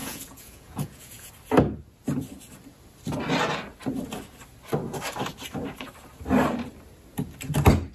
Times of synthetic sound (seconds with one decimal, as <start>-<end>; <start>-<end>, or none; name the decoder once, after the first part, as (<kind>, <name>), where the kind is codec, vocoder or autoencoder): 0.0-1.3 (vocoder, Vocos)